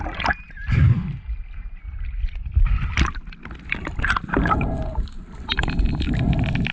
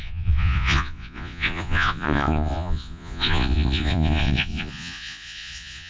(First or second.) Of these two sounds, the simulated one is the second